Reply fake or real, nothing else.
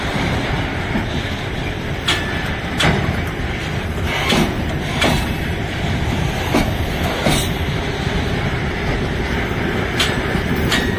fake